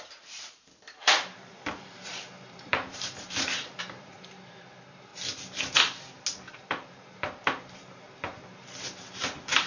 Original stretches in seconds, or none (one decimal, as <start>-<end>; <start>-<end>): 5.1-6.5